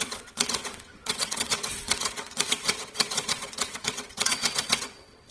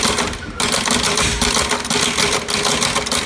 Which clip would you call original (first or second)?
second